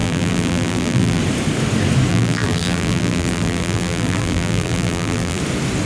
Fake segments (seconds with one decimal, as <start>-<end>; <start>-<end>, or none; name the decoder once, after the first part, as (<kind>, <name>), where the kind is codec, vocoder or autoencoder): 0.0-1.2 (vocoder, BigVGAN v2); 2.1-5.4